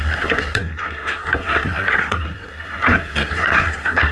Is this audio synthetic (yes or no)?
yes